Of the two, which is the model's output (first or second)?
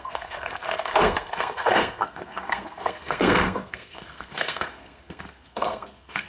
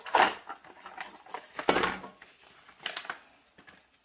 first